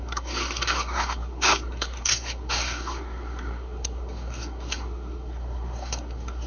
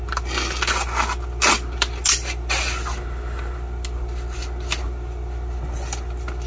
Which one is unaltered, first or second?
second